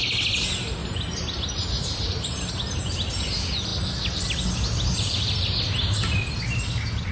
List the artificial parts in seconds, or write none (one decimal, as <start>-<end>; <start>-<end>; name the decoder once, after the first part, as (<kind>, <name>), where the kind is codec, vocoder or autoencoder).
0.8-2.5 (vocoder, BigVGAN v2)